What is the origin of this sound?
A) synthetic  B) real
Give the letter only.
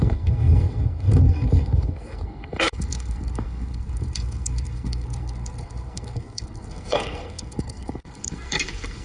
A